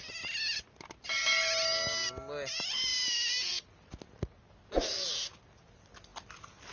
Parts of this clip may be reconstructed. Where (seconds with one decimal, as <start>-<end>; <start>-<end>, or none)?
none